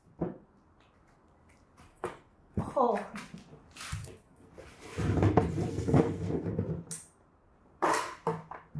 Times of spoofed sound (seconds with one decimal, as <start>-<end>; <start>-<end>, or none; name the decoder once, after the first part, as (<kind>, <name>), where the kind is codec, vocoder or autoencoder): 1.9-2.6 (codec, SNAC); 4.0-4.5; 5.7-6.6